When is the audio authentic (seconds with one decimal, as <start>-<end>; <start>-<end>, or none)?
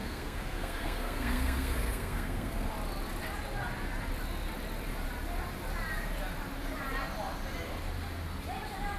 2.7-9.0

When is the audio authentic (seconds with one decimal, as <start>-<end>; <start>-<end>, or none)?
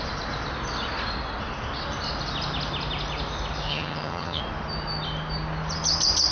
0.0-3.7; 4.4-6.3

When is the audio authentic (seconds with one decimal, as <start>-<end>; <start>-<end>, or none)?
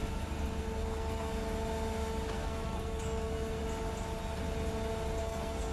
0.0-0.6; 1.3-2.3; 3.6-5.2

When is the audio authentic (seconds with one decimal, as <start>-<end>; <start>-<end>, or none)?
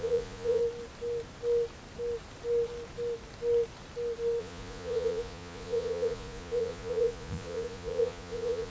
0.6-4.4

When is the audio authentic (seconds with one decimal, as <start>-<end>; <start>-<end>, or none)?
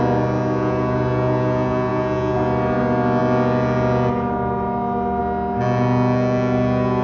0.0-7.0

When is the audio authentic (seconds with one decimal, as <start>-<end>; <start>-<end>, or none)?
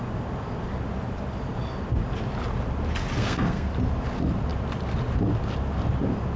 0.0-3.2; 3.7-6.4